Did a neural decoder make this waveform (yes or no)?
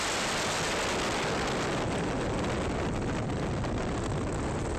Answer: no